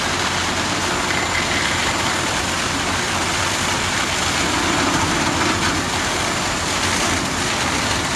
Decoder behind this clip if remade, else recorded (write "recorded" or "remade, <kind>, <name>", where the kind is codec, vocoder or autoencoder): recorded